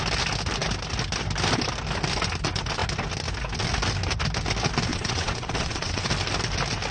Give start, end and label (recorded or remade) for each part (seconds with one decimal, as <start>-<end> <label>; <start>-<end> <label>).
0.0-4.9 recorded; 4.9-6.1 remade; 6.1-6.9 recorded